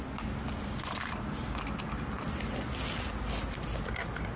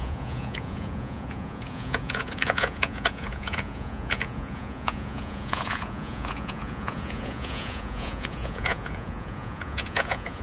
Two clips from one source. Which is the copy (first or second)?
second